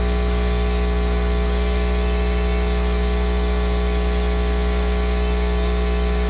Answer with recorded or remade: recorded